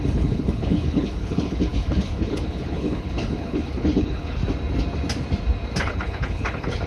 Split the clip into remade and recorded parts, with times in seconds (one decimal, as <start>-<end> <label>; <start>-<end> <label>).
0.0-4.4 remade; 4.4-5.8 recorded; 5.8-6.9 remade

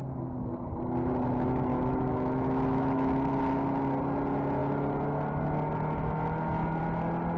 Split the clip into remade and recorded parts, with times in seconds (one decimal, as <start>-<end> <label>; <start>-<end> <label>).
0.0-1.7 recorded; 1.7-3.4 remade; 3.4-7.4 recorded

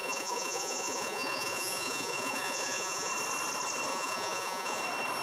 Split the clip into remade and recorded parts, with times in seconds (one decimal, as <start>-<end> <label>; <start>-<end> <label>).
0.0-3.1 remade; 3.1-3.9 recorded; 3.9-4.8 remade; 4.8-5.2 recorded

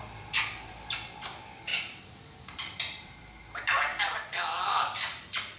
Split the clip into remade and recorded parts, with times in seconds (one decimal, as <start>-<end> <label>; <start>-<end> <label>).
0.0-5.6 remade

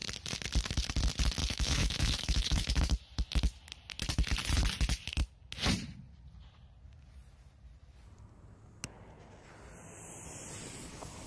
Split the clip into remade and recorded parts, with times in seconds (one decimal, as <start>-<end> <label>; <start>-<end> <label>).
0.0-1.4 recorded; 1.4-2.9 remade; 2.9-11.3 recorded